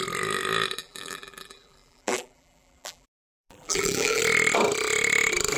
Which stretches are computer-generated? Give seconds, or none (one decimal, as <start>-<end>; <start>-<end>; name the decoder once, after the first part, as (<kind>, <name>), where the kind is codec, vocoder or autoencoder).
0.8-4.2 (vocoder, BigVGAN v2)